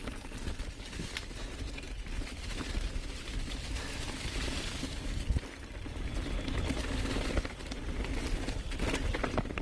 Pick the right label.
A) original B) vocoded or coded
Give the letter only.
A